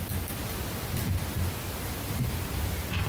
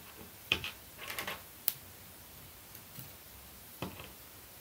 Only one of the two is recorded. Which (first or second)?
first